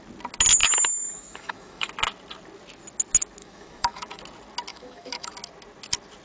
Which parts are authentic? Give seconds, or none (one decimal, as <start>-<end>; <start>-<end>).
0.0-0.6; 1.9-3.4; 4.2-4.7; 5.3-6.2